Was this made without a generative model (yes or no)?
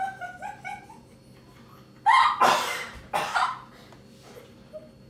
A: yes